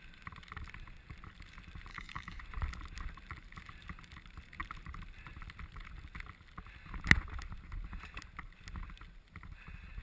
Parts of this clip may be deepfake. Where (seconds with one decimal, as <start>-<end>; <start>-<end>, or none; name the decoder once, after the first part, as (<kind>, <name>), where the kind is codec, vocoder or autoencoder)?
1.9-2.4 (codec, DAC)